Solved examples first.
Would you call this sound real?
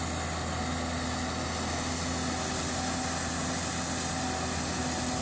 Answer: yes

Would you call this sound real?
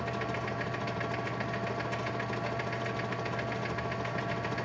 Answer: yes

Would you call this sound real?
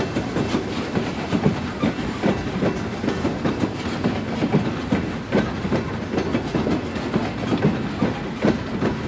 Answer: yes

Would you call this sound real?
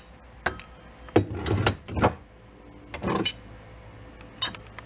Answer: yes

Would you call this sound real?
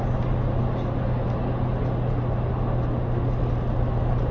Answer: yes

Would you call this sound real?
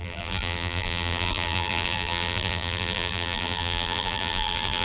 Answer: no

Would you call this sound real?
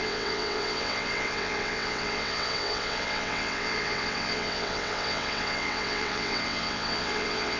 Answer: no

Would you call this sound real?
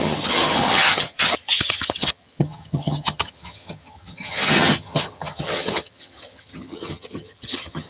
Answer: no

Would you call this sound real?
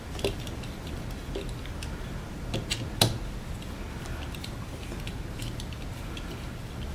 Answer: yes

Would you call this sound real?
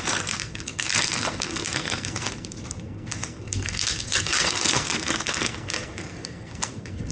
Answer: no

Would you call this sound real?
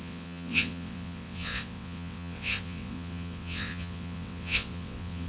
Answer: no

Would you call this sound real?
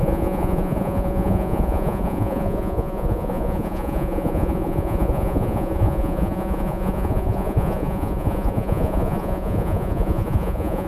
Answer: no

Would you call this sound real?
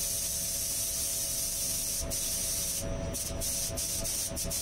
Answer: yes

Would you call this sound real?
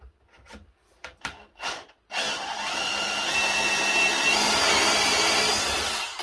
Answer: yes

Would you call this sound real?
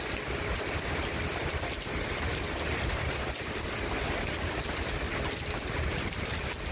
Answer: yes